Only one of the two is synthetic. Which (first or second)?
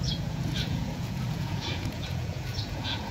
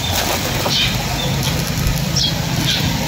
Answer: first